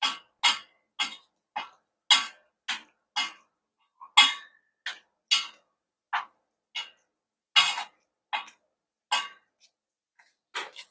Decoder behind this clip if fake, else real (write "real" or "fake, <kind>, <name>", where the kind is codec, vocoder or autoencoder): real